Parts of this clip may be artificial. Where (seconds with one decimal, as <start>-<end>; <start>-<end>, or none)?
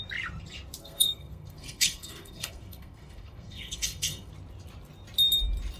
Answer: 0.8-4.3